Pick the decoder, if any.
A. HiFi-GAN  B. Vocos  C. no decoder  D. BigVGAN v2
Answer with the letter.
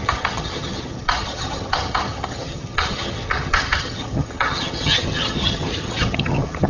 A